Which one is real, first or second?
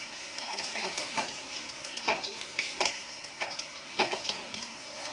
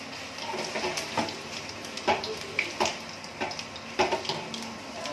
second